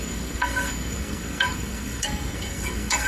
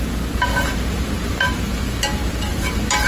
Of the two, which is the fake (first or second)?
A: first